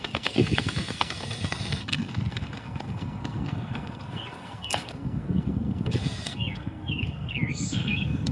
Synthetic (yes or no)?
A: yes